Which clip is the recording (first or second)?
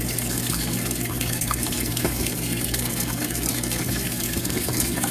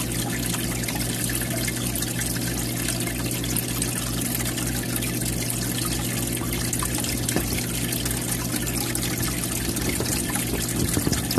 second